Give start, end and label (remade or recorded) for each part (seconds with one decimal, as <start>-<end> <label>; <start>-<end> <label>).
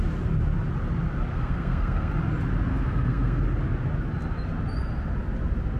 0.0-1.3 recorded; 1.3-2.1 remade; 2.1-2.7 recorded; 2.7-3.4 remade; 3.4-5.8 recorded